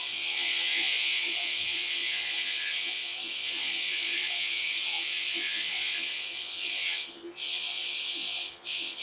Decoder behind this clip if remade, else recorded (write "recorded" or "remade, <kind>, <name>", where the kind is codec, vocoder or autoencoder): remade, vocoder, Vocos